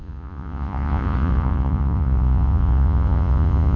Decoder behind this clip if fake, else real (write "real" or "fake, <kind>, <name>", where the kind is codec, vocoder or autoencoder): fake, vocoder, Vocos